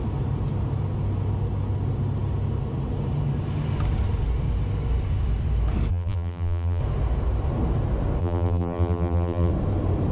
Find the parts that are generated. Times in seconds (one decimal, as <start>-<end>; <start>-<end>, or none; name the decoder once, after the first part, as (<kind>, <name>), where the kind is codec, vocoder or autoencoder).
5.9-6.8 (vocoder, BigVGAN v2); 8.2-9.5